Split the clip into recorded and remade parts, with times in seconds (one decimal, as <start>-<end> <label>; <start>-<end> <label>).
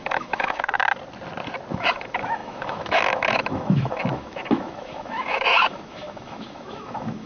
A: 0.0-0.8 remade; 0.8-1.7 recorded; 1.7-7.3 remade